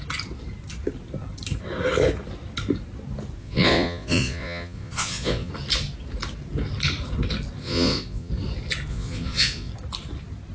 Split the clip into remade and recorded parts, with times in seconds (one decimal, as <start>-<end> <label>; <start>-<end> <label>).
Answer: 0.0-3.4 recorded; 3.4-5.5 remade; 5.5-7.6 recorded; 7.6-8.3 remade; 8.3-8.9 recorded; 8.9-9.7 remade; 9.7-10.5 recorded